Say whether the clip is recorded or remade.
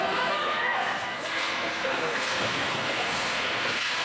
remade